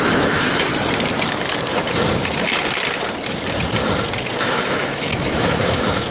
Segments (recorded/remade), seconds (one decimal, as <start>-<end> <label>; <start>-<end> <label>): 0.0-0.7 remade; 0.7-4.4 recorded; 4.4-6.1 remade